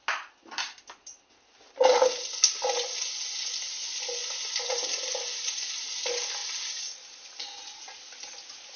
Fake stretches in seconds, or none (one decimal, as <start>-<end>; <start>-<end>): none